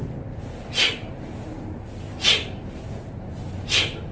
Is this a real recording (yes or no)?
yes